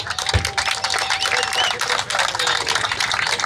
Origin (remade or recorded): recorded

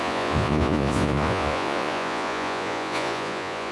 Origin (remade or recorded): remade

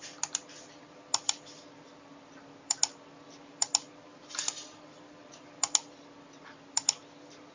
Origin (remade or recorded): recorded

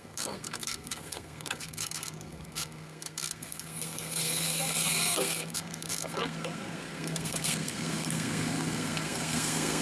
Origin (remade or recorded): remade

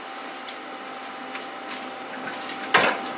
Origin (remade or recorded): recorded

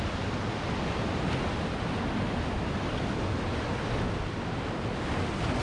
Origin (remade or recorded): remade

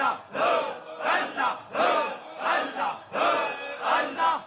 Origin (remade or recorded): recorded